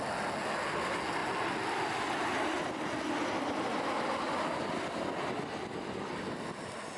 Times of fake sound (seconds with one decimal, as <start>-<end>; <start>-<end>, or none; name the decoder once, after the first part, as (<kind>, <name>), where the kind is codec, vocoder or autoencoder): none